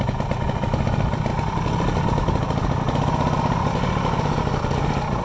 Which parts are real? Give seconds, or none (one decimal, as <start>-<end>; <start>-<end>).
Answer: 0.0-5.2